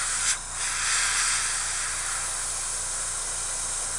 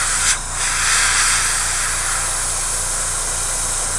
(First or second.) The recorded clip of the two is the first